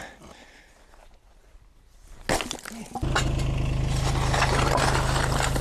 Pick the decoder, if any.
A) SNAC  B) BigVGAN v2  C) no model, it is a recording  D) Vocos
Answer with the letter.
C